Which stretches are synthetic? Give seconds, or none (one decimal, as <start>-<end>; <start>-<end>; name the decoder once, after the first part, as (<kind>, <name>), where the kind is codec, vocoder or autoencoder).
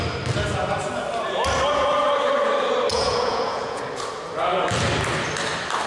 2.9-3.8 (vocoder, Vocos)